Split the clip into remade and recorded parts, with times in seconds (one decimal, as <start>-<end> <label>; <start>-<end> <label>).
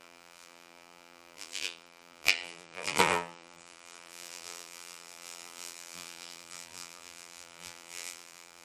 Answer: 0.0-8.6 remade